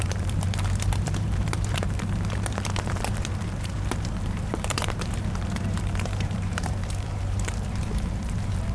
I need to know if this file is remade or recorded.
remade